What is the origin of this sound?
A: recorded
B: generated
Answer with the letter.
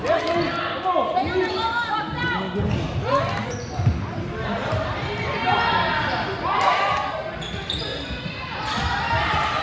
A